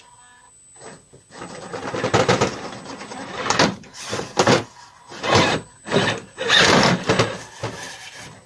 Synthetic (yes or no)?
no